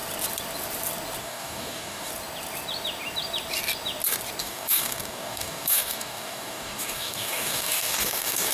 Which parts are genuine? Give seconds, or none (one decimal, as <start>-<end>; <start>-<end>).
0.0-1.2; 2.1-4.4